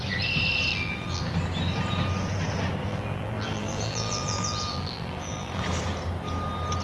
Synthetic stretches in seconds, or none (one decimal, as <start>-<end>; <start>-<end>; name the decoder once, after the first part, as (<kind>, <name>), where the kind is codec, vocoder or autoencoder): 0.7-1.2 (vocoder, BigVGAN v2); 2.9-5.6